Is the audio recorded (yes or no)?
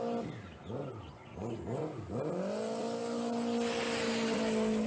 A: yes